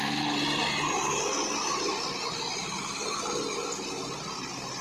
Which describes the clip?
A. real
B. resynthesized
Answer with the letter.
A